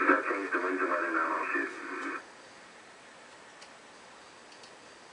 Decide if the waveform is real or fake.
real